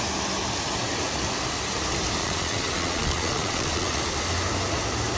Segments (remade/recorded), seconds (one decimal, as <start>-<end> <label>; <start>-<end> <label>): 0.0-2.2 recorded; 2.2-4.0 remade; 4.0-5.2 recorded